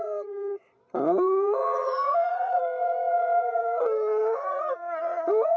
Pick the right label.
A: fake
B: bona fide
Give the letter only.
A